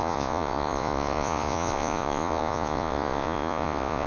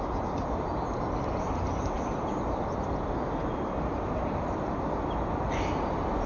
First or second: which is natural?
second